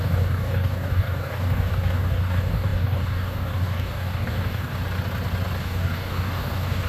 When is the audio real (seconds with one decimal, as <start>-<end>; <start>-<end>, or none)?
4.7-5.6

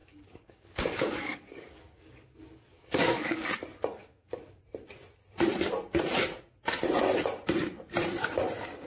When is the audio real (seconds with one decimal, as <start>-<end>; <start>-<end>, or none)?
3.5-4.0; 4.6-8.9

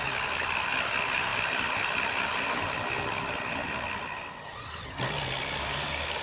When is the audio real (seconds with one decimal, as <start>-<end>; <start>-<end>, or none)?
0.0-5.6

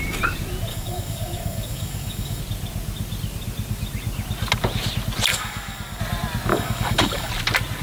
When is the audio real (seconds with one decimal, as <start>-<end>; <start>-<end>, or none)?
0.0-0.7; 2.4-5.3; 6.0-6.5; 7.3-7.8

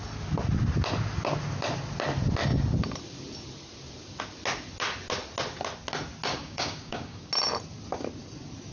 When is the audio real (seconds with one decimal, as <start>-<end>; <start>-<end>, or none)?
0.0-6.3; 7.3-8.7

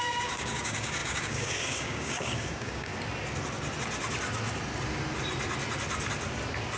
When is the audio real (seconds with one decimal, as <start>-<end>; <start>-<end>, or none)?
2.9-6.8

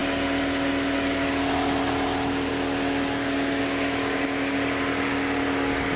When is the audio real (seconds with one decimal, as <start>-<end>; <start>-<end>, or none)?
0.0-6.0